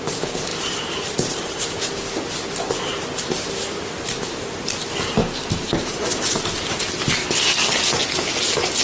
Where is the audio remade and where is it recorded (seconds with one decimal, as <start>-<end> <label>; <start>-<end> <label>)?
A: 0.0-0.5 recorded; 0.5-1.8 remade; 1.8-8.8 recorded